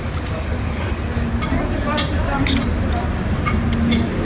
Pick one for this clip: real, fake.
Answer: real